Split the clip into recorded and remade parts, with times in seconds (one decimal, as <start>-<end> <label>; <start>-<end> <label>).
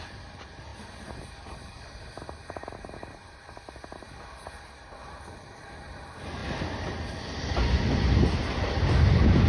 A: 0.0-9.5 recorded